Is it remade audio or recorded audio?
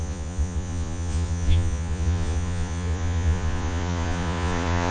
remade